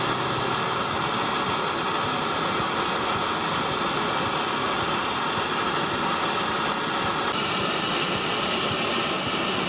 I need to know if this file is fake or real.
real